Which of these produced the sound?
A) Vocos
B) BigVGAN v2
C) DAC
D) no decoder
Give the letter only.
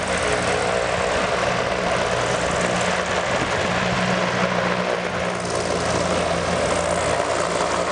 D